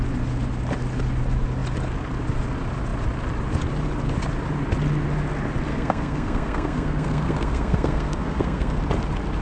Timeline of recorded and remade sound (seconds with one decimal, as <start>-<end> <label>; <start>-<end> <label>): 0.0-5.7 recorded; 5.7-8.8 remade; 8.8-9.4 recorded